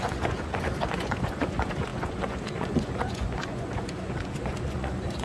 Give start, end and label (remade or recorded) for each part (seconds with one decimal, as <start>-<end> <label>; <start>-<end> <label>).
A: 0.0-5.2 remade